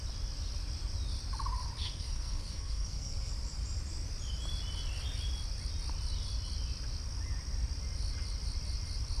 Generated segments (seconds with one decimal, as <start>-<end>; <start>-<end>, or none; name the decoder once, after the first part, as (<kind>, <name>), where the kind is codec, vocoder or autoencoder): 1.8-3.3 (codec, SNAC)

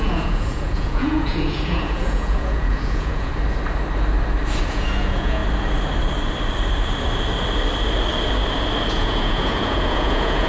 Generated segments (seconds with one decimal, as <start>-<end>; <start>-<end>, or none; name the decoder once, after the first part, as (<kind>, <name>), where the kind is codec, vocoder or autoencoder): 0.0-3.3 (vocoder, Vocos); 4.7-5.4; 8.9-10.5

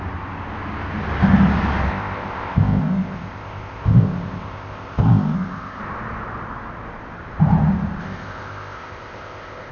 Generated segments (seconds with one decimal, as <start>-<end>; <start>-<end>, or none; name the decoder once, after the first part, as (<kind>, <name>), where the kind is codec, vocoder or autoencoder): 1.9-5.8 (codec, ZipCodec); 8.0-9.7

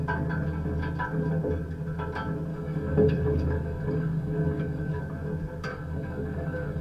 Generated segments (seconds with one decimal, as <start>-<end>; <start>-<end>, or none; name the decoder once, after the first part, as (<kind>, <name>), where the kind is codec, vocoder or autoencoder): 2.5-5.0 (codec, DAC); 5.7-6.8

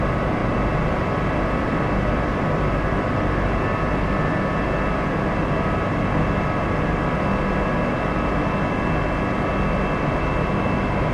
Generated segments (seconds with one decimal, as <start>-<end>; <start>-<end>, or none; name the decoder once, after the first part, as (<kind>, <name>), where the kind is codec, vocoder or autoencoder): 0.4-3.3 (vocoder, BigVGAN v2)